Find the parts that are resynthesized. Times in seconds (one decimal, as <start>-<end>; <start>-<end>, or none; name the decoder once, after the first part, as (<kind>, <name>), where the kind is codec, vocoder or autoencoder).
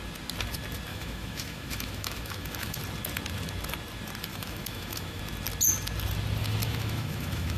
0.9-2.8 (autoencoder, DAC-VAE); 4.3-5.2; 6.4-7.6